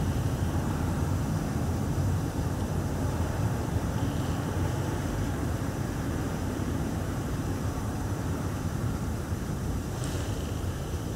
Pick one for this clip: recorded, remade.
remade